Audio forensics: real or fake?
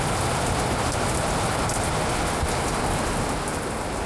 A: real